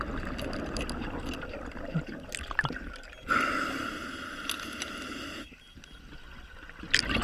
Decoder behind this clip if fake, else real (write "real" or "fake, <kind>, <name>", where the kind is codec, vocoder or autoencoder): real